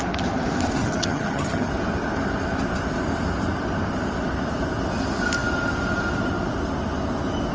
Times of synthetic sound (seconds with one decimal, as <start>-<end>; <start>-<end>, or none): 0.8-1.7